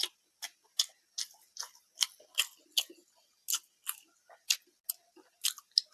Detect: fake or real real